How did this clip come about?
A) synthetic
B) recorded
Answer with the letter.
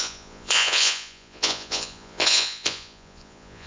A